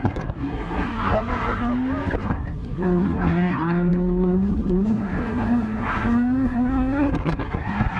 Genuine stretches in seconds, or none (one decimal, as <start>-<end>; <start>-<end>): 1.7-2.2